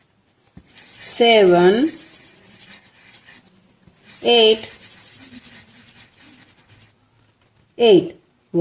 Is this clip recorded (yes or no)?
yes